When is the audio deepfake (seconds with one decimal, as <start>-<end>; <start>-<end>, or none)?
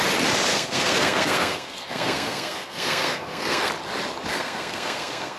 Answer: 0.5-3.7; 4.3-5.4